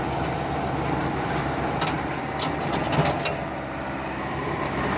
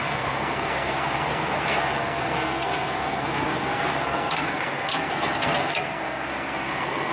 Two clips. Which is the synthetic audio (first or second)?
second